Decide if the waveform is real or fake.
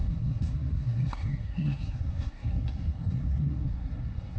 fake